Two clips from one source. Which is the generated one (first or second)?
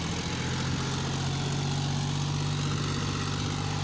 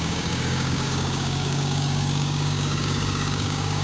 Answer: second